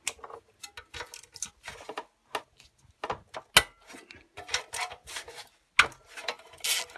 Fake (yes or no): no